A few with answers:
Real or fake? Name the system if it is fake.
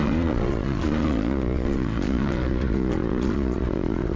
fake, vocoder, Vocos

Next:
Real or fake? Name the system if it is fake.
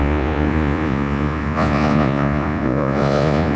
fake, vocoder, Vocos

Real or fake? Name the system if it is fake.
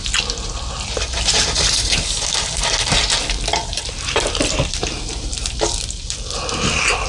fake, vocoder, BigVGAN v2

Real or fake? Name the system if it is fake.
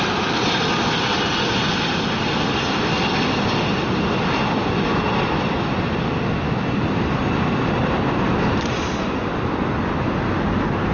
real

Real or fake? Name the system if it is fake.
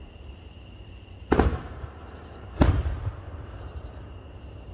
fake, vocoder, BigVGAN v2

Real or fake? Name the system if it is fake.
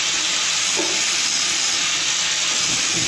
real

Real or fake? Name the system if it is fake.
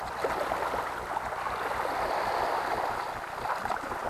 real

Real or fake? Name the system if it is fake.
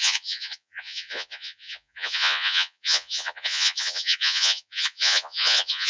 fake, vocoder, Vocos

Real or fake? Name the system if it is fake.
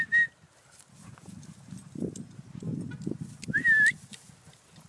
real